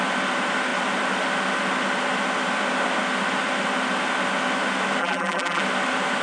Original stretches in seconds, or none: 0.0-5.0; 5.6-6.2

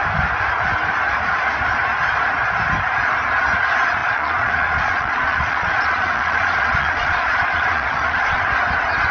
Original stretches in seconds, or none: 0.0-4.0; 8.4-9.1

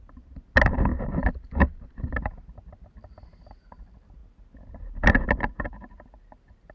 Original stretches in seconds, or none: 0.0-6.7

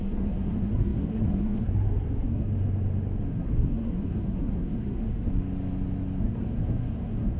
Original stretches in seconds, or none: 2.5-3.3; 5.3-6.2

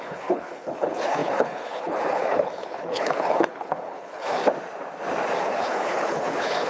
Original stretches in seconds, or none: 4.4-5.4

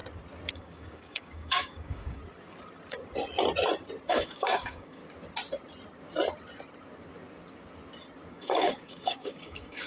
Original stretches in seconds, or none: 0.0-0.5; 2.2-4.1; 5.0-8.3

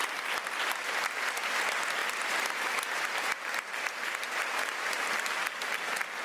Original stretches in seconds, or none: 0.0-1.2